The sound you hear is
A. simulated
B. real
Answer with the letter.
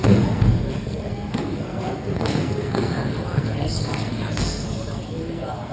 A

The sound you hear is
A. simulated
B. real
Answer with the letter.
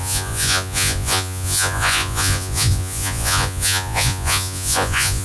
A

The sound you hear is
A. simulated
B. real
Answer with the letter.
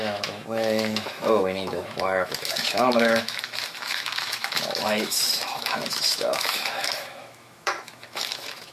A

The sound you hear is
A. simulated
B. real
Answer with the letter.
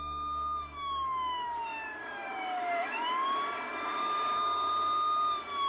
A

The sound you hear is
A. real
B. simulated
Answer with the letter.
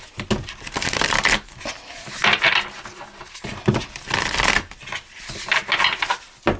A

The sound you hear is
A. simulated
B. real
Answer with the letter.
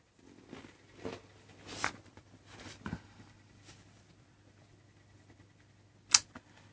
B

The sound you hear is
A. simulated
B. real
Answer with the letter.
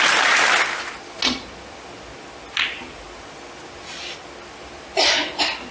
B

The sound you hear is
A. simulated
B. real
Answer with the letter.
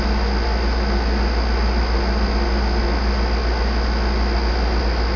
B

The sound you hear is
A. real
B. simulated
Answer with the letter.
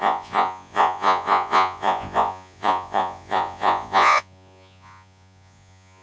B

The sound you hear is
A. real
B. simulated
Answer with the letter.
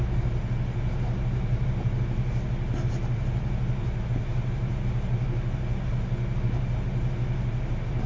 A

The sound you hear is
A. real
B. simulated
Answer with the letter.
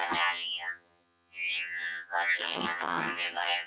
B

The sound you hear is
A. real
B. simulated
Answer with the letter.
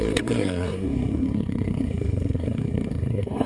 B